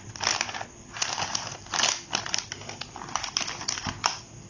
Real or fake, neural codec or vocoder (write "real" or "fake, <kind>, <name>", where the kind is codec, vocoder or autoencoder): real